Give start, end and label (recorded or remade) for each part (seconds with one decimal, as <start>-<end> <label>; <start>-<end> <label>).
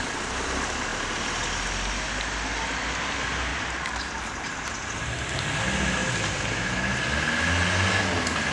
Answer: 0.0-3.5 recorded; 3.5-4.1 remade; 4.1-8.5 recorded